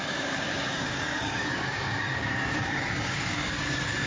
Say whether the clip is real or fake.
fake